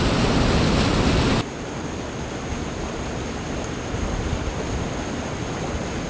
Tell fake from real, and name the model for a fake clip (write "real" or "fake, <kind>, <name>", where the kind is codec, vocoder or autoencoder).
real